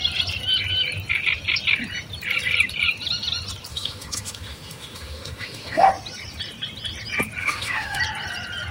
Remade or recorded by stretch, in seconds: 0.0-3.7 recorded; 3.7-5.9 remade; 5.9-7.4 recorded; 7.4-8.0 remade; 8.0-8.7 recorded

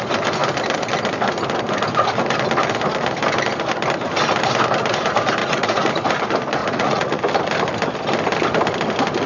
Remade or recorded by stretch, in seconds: 0.0-5.4 recorded; 5.4-5.9 remade; 5.9-6.6 recorded; 6.6-7.2 remade; 7.2-9.3 recorded

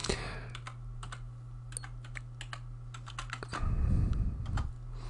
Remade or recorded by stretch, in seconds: 0.0-5.1 recorded

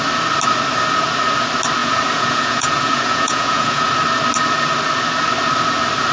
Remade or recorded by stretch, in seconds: 0.0-1.8 recorded; 1.8-3.9 remade; 3.9-6.1 recorded

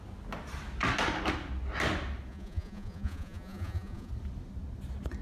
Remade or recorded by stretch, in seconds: 0.0-2.3 recorded; 2.3-4.1 remade; 4.1-5.2 recorded

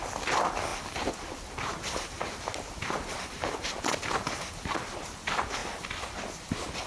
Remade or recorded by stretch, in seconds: 0.0-6.9 recorded

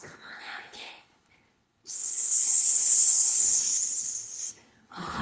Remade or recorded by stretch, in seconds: 0.0-5.2 remade